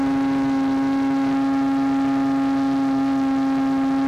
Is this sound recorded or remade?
recorded